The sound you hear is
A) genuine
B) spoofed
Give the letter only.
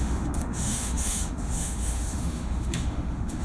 B